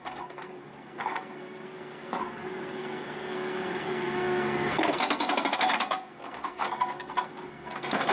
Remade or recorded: remade